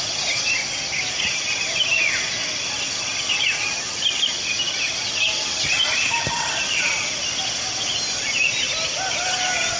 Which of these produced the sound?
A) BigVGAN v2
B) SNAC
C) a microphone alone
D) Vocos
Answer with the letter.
C